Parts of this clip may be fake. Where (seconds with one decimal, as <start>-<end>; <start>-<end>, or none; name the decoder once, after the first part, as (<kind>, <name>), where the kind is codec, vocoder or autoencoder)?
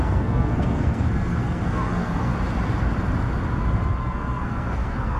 0.0-2.3 (codec, SNAC); 4.0-5.2